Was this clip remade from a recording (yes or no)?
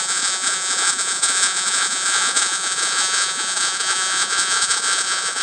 yes